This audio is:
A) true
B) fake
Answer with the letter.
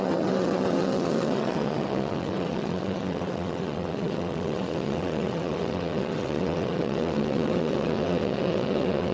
B